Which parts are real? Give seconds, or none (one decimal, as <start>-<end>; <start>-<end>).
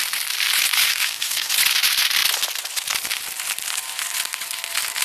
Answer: 0.0-0.9; 1.5-5.0